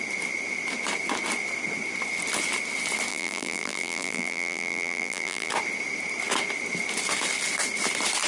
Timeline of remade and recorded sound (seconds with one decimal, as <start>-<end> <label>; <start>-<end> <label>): 0.0-3.1 recorded; 3.1-5.5 remade; 5.5-8.3 recorded